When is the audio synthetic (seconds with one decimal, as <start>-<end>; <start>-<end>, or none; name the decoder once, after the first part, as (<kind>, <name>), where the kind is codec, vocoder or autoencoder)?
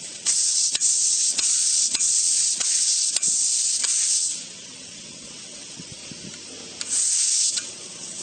0.0-2.9 (vocoder, WaveNeXt); 4.0-6.0; 7.5-8.2